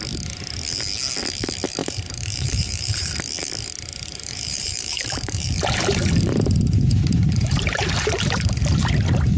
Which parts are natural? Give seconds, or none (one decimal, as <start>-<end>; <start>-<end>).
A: 0.0-1.8; 3.1-4.1